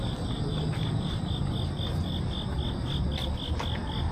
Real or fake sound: real